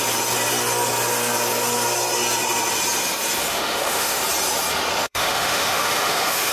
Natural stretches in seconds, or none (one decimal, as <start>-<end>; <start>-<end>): 0.0-3.5; 4.2-4.9